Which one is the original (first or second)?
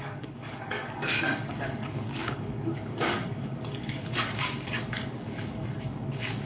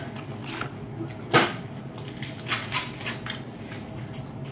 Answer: second